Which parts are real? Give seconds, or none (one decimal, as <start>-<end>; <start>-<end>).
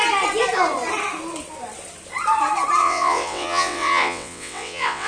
0.0-2.8